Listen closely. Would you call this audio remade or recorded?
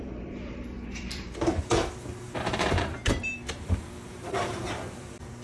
remade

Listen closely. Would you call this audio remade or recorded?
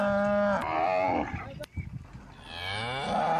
recorded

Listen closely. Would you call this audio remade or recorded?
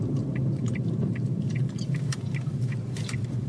remade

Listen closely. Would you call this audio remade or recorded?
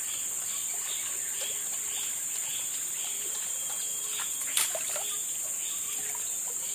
recorded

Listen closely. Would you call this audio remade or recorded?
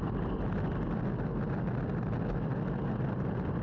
recorded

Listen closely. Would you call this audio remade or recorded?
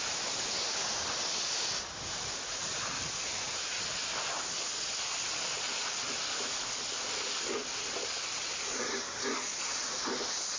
recorded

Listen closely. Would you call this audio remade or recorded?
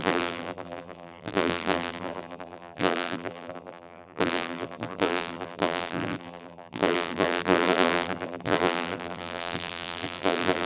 remade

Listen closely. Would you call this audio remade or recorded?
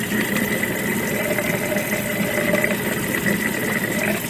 recorded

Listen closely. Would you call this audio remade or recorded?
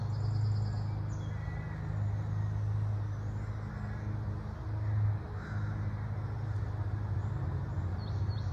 recorded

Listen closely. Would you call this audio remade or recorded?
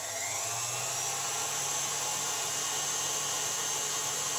recorded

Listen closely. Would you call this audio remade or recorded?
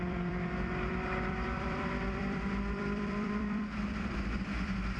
remade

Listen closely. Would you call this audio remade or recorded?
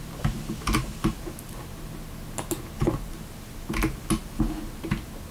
recorded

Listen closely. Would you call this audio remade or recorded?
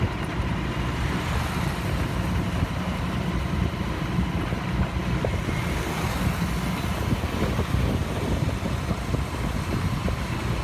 recorded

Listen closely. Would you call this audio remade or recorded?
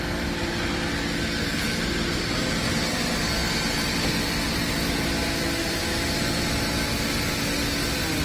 recorded